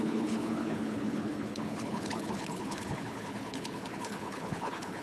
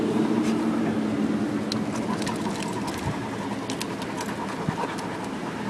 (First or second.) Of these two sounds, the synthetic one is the first